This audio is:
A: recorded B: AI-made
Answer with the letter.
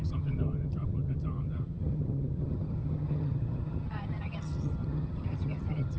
B